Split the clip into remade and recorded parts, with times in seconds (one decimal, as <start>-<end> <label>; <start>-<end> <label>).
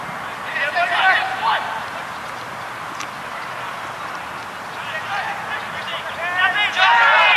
0.0-7.4 recorded